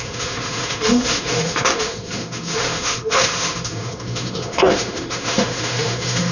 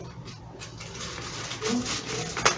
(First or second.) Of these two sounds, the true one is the second